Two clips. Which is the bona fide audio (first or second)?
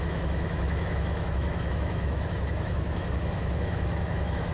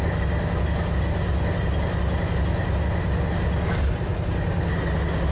second